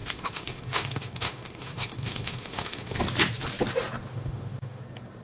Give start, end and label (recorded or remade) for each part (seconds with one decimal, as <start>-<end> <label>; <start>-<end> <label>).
0.0-3.0 remade; 3.0-4.1 recorded; 4.1-4.8 remade; 4.8-5.2 recorded